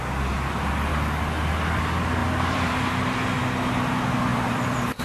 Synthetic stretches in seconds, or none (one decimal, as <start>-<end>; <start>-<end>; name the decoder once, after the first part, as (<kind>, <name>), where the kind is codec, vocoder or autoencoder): 2.2-3.4 (vocoder, BigVGAN v2); 4.3-5.0